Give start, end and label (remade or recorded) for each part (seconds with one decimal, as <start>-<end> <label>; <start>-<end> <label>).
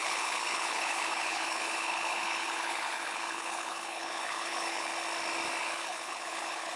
0.0-4.9 remade; 4.9-5.6 recorded; 5.6-6.8 remade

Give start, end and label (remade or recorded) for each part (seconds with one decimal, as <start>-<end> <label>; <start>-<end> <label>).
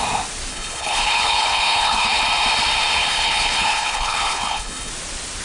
0.0-0.5 recorded; 0.5-2.2 remade; 2.2-3.0 recorded; 3.0-4.9 remade; 4.9-5.4 recorded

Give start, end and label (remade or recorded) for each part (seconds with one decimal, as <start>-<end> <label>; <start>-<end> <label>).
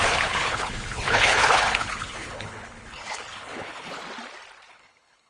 0.0-4.0 remade; 4.0-4.7 recorded; 4.7-5.3 remade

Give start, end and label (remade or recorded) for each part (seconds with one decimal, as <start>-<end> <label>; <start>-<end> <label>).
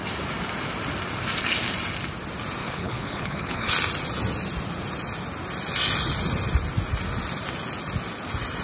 0.0-2.6 recorded; 2.6-3.7 remade; 3.7-8.6 recorded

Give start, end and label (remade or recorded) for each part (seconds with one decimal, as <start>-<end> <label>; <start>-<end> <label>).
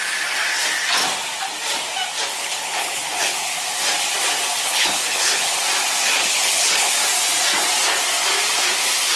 0.0-2.3 recorded; 2.3-3.6 remade; 3.6-4.6 recorded; 4.6-5.6 remade; 5.6-6.1 recorded; 6.1-6.9 remade; 6.9-9.2 recorded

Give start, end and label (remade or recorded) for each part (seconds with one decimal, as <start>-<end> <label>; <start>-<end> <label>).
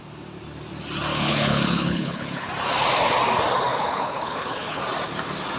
0.0-1.1 recorded; 1.1-2.5 remade; 2.5-3.7 recorded; 3.7-4.8 remade; 4.8-5.6 recorded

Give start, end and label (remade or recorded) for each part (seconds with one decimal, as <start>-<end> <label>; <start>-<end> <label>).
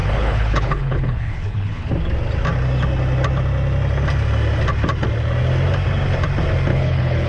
0.0-1.9 remade; 1.9-6.7 recorded; 6.7-7.3 remade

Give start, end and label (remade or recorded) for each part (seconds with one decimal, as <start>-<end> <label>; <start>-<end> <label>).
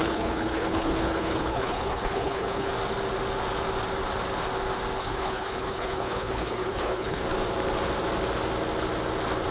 0.0-2.7 remade; 2.7-5.0 recorded; 5.0-7.2 remade; 7.2-9.5 recorded